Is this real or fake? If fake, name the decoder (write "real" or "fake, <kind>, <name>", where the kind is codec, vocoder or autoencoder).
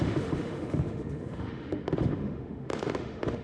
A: fake, autoencoder, DAC-VAE